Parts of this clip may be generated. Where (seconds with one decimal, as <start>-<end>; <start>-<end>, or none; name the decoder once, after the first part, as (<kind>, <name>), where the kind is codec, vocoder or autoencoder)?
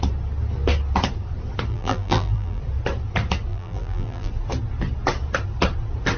1.7-2.6 (vocoder, BigVGAN v2); 3.5-4.3